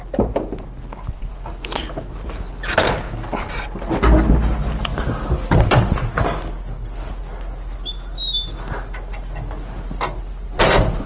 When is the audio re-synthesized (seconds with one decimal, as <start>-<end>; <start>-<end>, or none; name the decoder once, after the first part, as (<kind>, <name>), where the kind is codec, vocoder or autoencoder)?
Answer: none